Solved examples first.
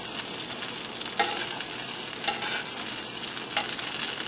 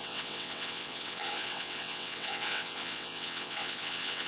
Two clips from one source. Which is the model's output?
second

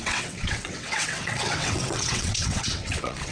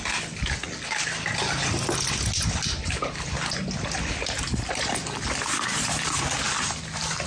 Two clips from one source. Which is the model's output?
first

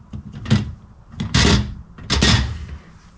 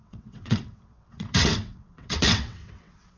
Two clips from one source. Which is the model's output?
second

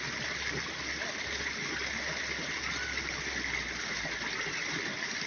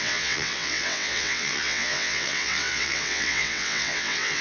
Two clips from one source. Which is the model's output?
second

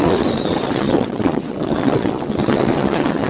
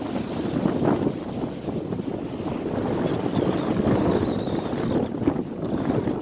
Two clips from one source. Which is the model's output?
first